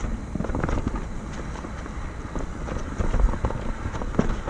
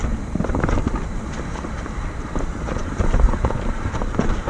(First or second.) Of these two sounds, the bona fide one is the first